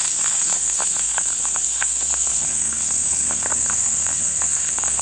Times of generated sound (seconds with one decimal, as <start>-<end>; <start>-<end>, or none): 0.0-5.0